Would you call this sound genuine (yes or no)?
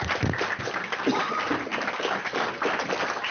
yes